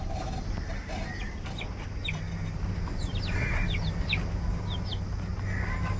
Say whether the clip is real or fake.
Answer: real